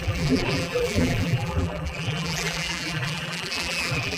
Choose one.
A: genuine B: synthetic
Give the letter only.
B